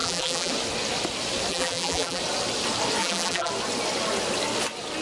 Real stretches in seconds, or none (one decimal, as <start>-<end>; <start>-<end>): 0.5-1.5; 2.2-3.0; 3.5-5.0